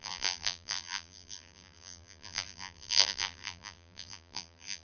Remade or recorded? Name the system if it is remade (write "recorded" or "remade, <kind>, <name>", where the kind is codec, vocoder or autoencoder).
remade, vocoder, BigVGAN v2